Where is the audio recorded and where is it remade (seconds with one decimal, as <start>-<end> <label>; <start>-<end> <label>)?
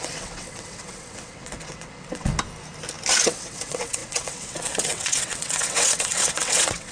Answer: 0.0-2.3 remade; 2.3-3.2 recorded; 3.2-6.9 remade